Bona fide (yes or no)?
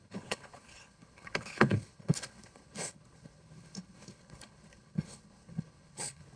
no